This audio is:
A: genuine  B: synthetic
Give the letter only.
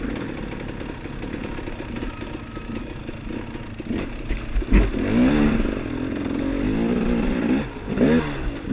A